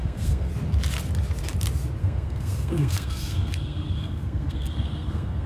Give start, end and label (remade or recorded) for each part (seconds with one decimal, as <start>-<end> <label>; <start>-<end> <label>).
0.0-0.5 remade; 0.5-2.0 recorded; 2.0-5.5 remade